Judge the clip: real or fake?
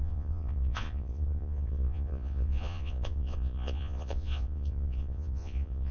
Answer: fake